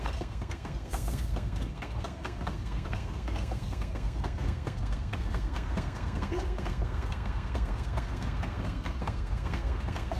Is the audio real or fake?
fake